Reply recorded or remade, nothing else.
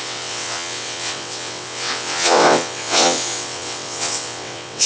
remade